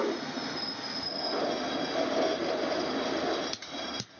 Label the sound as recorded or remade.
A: recorded